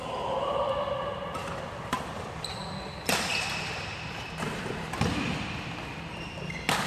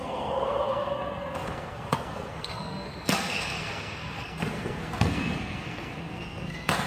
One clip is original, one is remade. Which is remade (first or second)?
second